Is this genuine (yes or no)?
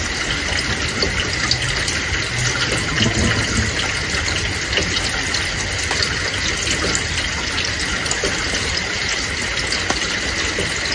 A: yes